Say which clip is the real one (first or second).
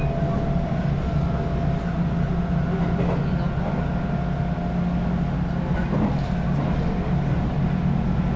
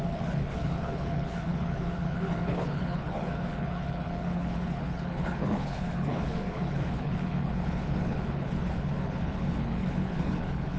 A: first